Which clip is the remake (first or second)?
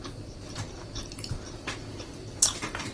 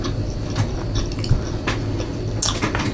first